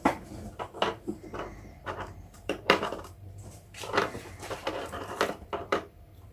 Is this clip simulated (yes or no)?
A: yes